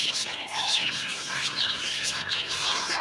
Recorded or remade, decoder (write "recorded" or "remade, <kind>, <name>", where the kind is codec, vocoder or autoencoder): remade, codec, SNAC